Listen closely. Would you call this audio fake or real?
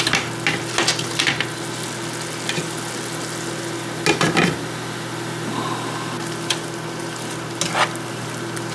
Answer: real